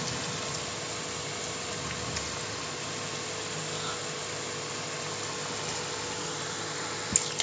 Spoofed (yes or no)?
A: no